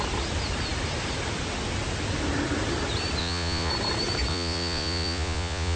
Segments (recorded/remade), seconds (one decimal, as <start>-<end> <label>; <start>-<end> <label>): 0.0-3.2 recorded; 3.2-3.7 remade; 3.7-4.3 recorded; 4.3-5.8 remade